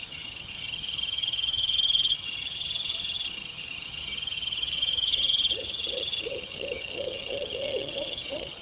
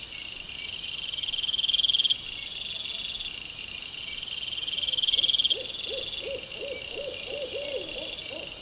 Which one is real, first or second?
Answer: second